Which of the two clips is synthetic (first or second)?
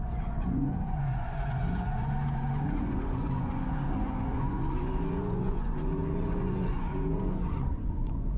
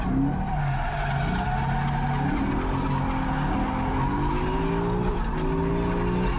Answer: first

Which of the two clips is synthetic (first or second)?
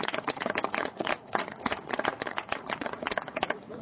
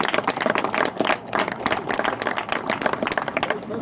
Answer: first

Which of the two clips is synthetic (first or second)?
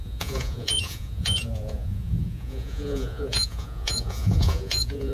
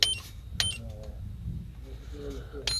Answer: first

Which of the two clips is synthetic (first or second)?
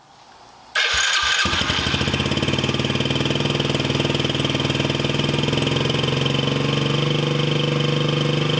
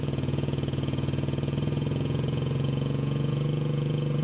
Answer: second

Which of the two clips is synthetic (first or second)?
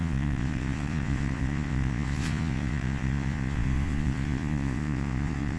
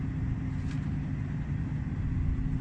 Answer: first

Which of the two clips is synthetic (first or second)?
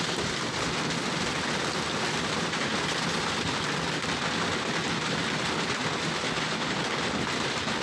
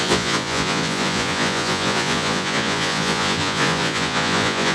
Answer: second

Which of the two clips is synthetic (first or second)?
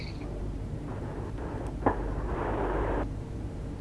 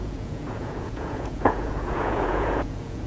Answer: second